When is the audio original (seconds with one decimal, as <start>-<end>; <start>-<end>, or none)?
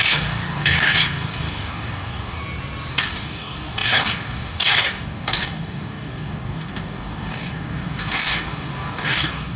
2.4-2.9